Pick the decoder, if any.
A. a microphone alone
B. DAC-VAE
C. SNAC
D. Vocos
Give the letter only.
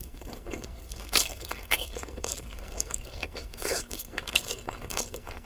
C